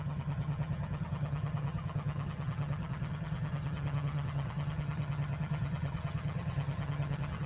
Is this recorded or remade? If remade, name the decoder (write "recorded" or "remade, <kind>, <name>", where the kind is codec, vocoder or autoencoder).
remade, vocoder, HiFi-GAN